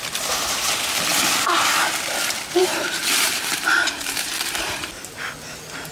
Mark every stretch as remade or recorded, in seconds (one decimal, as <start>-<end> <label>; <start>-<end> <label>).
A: 0.0-2.6 recorded; 2.6-4.9 remade; 4.9-5.9 recorded

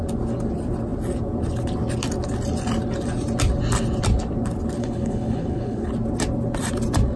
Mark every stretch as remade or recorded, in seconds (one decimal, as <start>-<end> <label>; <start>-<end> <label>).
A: 0.0-4.8 recorded; 4.8-5.9 remade; 5.9-7.2 recorded

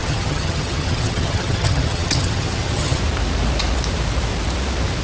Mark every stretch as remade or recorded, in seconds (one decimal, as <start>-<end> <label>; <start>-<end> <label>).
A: 0.0-3.0 remade; 3.0-5.0 recorded